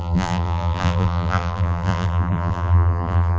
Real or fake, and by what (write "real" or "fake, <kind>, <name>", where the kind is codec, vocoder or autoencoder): fake, vocoder, BigVGAN v2